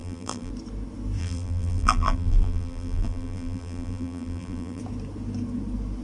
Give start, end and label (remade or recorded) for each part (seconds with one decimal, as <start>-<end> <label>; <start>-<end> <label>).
0.0-0.5 remade; 0.5-1.2 recorded; 1.2-4.8 remade; 4.8-6.0 recorded